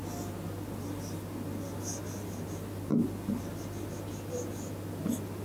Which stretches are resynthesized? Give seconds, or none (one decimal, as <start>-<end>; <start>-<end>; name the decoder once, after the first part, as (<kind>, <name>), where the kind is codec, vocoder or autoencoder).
none